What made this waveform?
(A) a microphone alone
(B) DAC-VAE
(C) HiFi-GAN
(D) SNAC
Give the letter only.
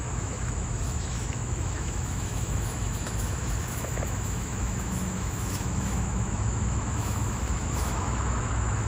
B